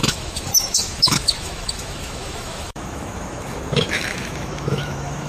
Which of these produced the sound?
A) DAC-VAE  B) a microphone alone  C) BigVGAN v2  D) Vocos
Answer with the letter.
A